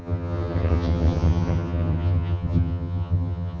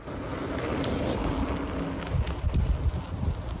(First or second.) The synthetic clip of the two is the first